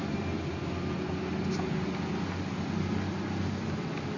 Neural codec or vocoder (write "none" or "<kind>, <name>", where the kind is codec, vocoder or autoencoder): none